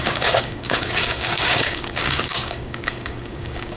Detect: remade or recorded remade